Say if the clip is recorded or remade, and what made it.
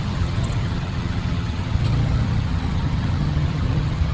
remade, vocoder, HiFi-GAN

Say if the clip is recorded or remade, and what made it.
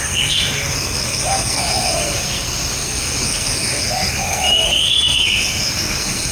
remade, codec, SNAC